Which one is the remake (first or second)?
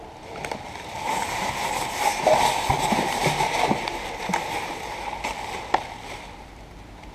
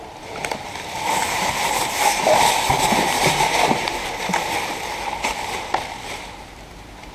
second